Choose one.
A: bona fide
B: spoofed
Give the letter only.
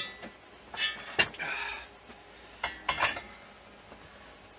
A